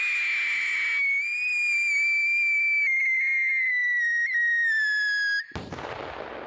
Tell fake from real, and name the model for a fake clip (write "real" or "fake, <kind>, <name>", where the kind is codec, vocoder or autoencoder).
real